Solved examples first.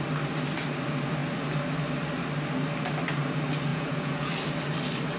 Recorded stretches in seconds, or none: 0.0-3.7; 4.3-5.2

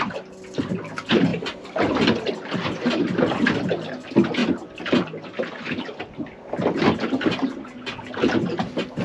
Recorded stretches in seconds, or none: 0.0-9.0

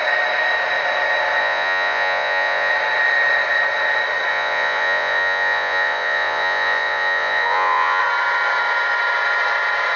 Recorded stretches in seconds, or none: 0.0-1.4; 2.7-4.3; 8.0-10.0

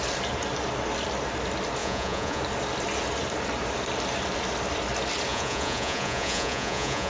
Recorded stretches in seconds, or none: 0.0-1.8; 2.4-5.3

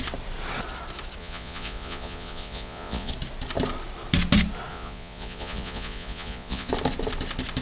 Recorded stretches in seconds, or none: 0.0-1.2; 3.1-4.7; 6.7-7.6